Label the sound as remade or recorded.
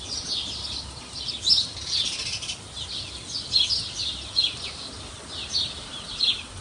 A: recorded